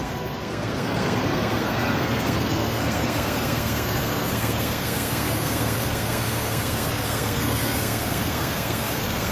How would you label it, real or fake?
fake